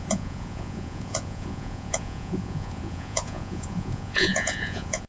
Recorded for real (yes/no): no